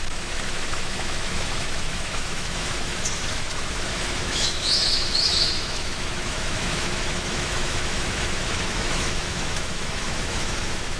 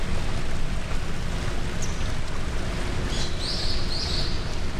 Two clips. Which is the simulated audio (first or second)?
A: first